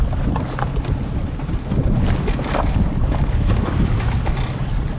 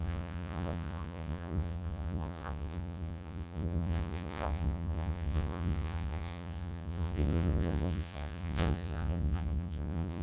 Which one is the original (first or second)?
first